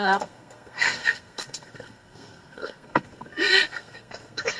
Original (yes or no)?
no